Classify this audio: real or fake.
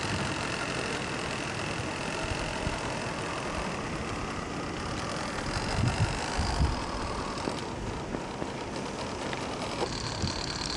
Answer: real